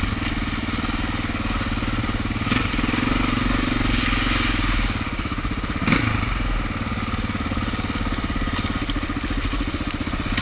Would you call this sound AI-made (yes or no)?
no